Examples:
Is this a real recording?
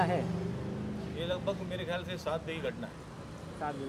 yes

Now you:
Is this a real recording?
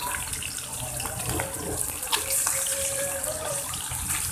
no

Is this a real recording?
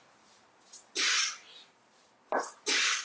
no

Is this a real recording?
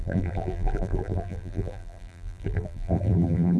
no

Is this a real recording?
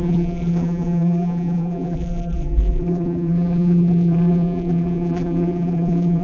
no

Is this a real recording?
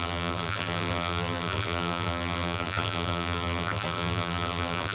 no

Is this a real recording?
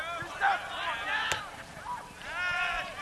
yes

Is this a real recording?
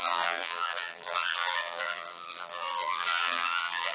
no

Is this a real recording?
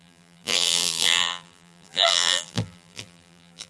no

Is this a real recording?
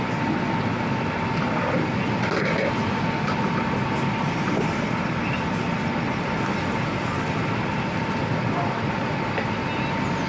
yes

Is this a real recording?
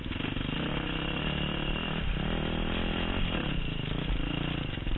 yes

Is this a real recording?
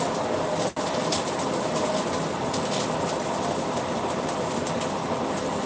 yes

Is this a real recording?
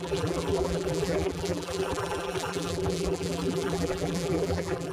no